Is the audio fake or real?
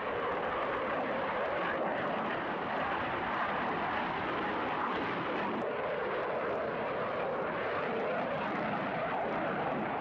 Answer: fake